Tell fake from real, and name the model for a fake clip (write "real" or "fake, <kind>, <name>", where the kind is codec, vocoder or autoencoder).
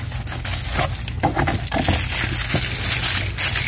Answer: real